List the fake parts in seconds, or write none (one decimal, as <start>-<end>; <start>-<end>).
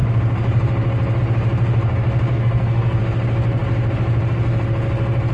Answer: 2.3-3.0